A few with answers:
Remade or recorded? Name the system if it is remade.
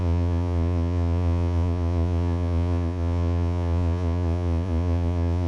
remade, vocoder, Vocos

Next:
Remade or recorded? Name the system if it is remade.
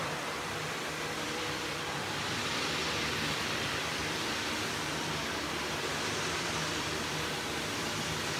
remade, vocoder, BigVGAN v2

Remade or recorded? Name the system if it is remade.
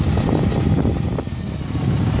recorded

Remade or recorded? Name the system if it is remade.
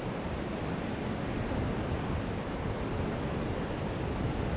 recorded